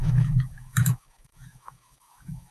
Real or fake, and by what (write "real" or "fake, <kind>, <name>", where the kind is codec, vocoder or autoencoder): fake, autoencoder, DAC-VAE